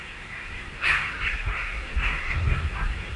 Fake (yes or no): yes